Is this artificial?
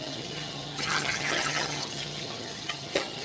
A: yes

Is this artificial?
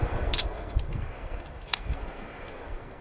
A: yes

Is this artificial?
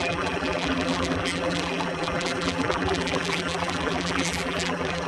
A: yes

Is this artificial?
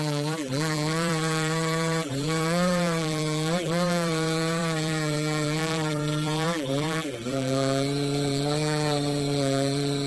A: yes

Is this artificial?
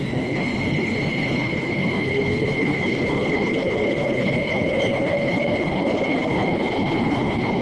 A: yes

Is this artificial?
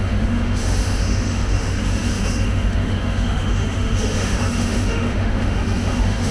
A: yes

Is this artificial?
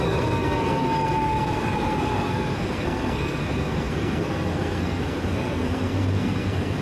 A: yes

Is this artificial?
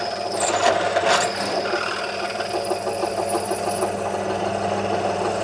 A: no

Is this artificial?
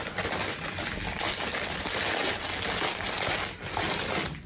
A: no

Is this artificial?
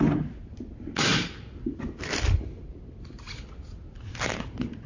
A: no